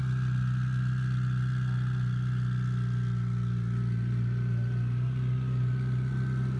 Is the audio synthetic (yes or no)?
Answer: no